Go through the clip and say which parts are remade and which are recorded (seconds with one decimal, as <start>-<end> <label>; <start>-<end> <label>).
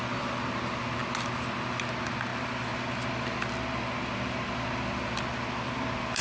0.0-6.2 recorded